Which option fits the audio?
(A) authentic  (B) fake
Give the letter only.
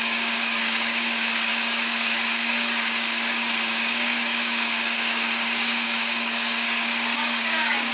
B